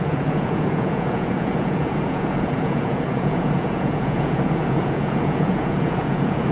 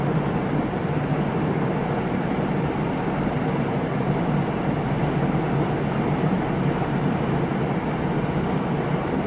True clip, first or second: second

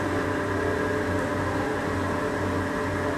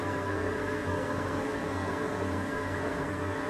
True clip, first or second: first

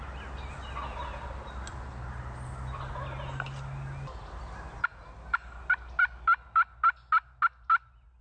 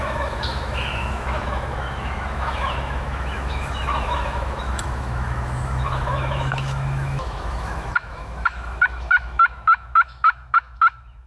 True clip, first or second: first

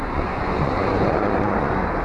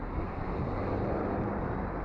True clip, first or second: second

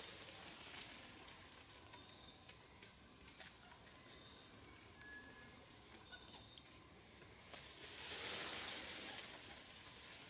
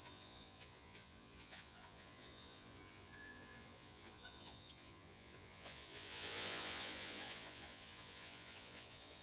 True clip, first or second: first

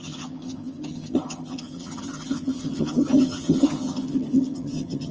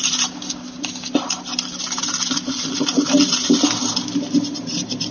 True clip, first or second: second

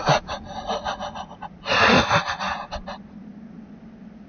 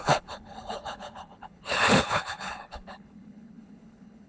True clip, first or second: first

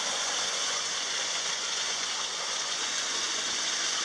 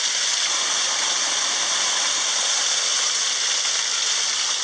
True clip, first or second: second